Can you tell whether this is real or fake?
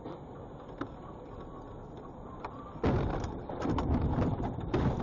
fake